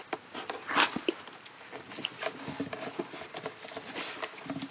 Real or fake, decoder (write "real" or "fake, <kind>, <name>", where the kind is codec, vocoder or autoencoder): real